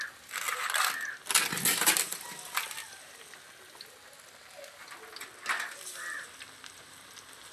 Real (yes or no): yes